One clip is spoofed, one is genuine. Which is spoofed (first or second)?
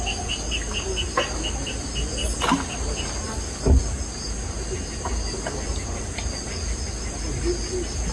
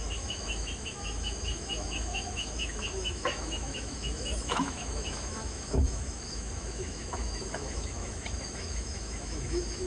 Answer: second